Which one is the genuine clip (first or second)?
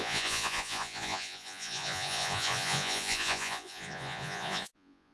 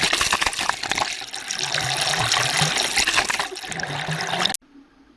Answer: second